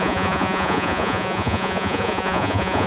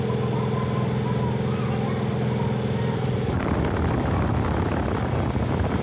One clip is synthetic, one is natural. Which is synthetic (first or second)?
first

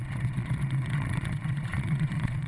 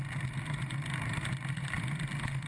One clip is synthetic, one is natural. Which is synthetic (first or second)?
first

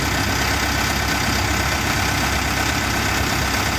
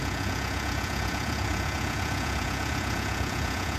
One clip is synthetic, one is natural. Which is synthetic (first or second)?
second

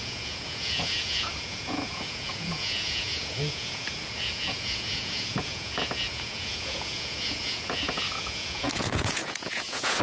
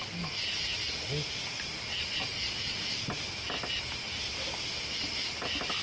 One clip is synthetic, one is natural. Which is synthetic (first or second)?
first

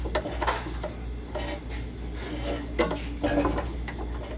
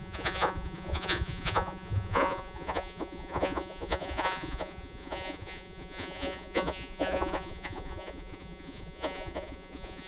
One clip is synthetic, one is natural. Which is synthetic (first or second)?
second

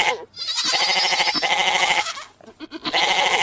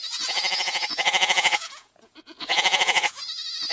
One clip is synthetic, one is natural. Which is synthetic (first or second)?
second